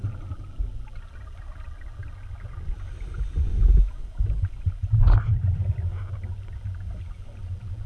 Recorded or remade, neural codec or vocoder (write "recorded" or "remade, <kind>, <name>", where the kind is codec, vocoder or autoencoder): recorded